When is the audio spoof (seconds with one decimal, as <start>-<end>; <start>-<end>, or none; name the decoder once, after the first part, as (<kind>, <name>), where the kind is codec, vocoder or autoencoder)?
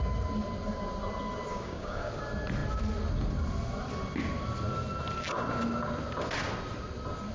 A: 1.5-2.2 (codec, DAC)